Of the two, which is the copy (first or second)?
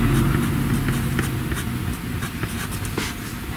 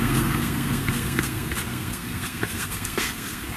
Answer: second